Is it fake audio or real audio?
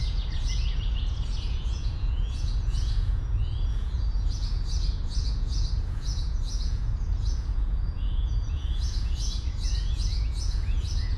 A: fake